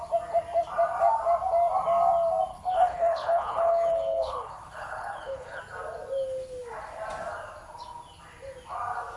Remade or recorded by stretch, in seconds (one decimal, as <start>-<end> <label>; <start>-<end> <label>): 0.0-2.5 recorded; 2.5-5.6 remade; 5.6-9.2 recorded

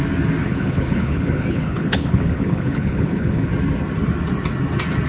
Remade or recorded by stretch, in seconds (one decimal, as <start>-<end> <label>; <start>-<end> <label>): 0.0-0.4 recorded; 0.4-3.5 remade; 3.5-5.1 recorded

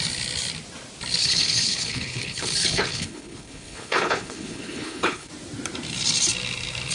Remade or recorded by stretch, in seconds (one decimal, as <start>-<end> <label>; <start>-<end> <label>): 0.0-1.2 recorded; 1.2-5.3 remade; 5.3-6.9 recorded

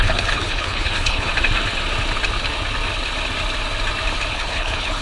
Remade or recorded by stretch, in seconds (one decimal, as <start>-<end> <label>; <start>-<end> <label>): 0.0-1.3 remade; 1.3-4.3 recorded; 4.3-5.0 remade

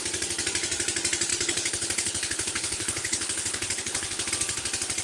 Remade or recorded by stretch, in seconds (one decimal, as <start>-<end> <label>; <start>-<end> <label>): 0.0-1.3 recorded; 1.3-4.3 remade; 4.3-5.0 recorded

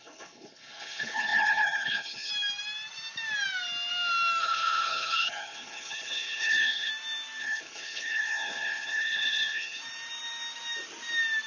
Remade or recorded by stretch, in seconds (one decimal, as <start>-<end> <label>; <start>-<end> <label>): 0.0-2.3 remade; 2.3-4.4 recorded; 4.4-6.9 remade; 6.9-7.4 recorded; 7.4-9.8 remade; 9.8-11.5 recorded